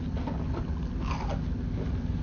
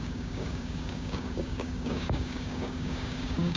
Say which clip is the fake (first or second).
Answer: second